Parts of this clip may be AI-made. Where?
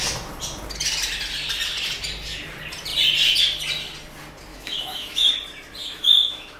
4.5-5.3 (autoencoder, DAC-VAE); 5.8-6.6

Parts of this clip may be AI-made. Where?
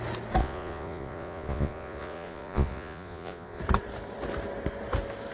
0.4-3.6 (vocoder, Vocos)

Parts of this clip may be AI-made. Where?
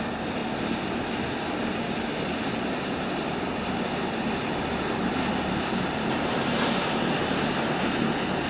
none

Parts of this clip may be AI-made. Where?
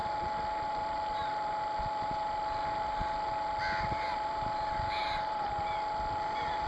5.0-5.5 (vocoder, BigVGAN v2)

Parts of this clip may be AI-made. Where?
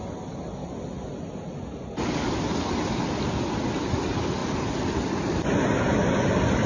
none